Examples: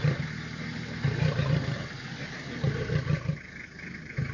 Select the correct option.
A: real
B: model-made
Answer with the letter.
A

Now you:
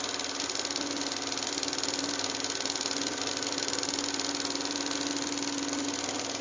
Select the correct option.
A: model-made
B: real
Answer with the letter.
B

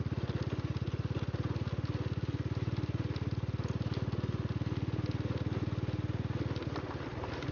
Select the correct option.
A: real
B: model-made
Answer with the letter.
A